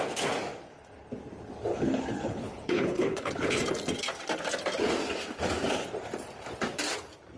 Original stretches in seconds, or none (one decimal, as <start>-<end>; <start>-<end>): 0.0-1.7; 3.6-7.4